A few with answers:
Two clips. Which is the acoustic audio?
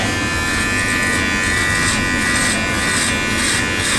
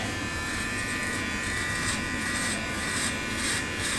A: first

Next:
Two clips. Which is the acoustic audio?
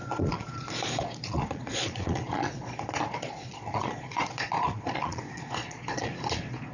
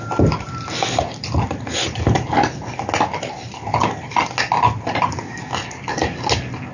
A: second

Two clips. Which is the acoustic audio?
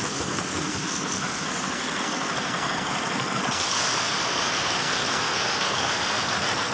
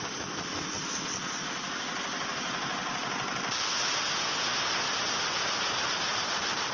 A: second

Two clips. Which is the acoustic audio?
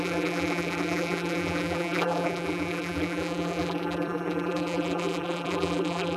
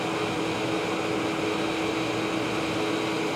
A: second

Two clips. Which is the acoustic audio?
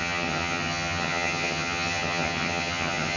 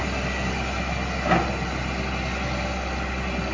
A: second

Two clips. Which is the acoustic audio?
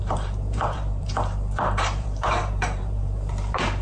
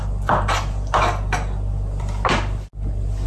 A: second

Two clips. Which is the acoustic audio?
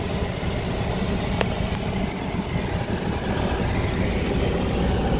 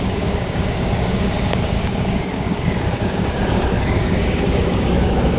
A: first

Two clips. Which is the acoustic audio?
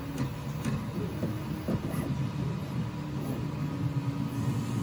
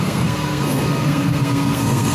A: first